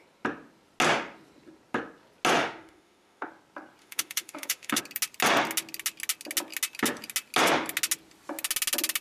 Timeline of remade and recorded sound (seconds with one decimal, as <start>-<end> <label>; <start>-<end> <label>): 0.0-2.4 recorded; 2.4-3.3 remade; 3.3-3.8 recorded; 3.8-4.8 remade; 4.8-9.0 recorded